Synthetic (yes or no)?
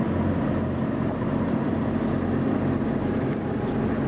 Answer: no